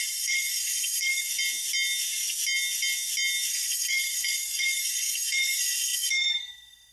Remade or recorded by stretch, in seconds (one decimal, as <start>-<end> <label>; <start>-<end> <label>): 0.0-1.3 remade; 1.3-3.5 recorded; 3.5-6.9 remade